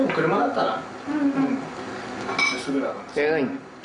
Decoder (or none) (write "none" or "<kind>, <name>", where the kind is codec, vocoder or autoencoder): none